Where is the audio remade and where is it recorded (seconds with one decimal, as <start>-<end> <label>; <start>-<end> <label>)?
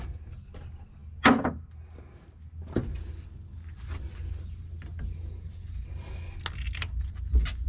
0.0-7.7 recorded